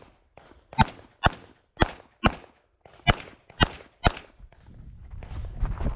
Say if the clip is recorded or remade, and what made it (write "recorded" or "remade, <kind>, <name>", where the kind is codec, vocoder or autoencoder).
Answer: recorded